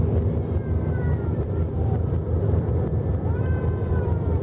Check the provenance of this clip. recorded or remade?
remade